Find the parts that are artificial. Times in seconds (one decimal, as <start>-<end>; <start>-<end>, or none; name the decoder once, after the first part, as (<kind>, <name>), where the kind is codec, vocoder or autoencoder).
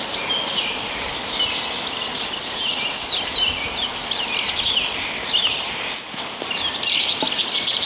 4.0-4.7 (vocoder, BigVGAN v2)